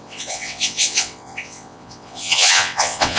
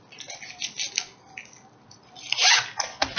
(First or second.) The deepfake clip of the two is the first